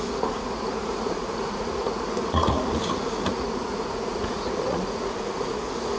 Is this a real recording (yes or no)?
no